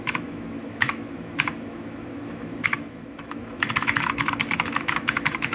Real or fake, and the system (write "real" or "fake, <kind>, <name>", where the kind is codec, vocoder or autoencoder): fake, autoencoder, DAC-VAE